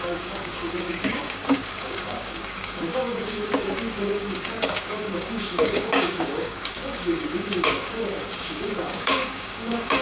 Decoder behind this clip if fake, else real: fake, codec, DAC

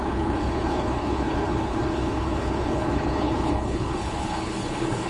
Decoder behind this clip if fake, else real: fake, codec, HILCodec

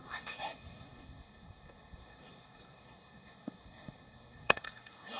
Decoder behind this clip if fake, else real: fake, codec, SNAC